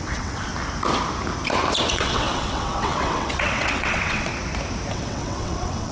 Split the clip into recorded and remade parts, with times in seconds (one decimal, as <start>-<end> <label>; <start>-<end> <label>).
0.0-0.5 remade; 0.5-1.9 recorded; 1.9-4.3 remade; 4.3-4.9 recorded; 4.9-5.9 remade